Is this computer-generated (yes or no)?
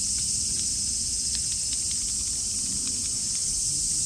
no